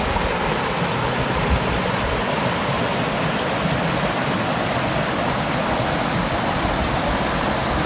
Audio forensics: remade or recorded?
recorded